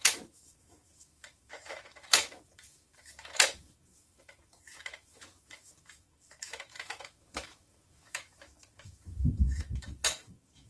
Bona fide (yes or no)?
no